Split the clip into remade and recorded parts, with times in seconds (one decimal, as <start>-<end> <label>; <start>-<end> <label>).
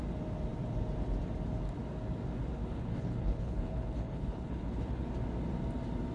0.0-2.6 recorded; 2.6-5.0 remade; 5.0-6.1 recorded